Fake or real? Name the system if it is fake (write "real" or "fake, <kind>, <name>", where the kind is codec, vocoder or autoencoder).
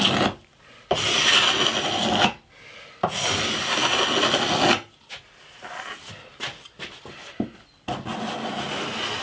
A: real